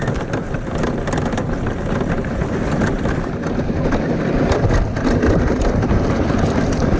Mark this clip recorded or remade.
recorded